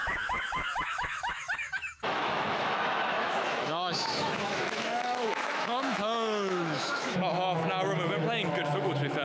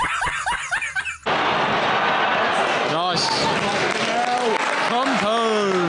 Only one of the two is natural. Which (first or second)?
second